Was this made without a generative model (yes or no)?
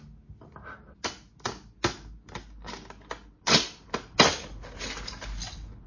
yes